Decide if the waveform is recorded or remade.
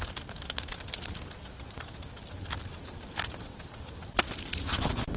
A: recorded